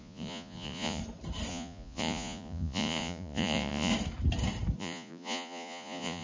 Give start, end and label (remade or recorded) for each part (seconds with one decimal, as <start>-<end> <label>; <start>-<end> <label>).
0.0-1.0 remade; 1.0-1.5 recorded; 1.5-3.9 remade; 3.9-4.8 recorded; 4.8-6.2 remade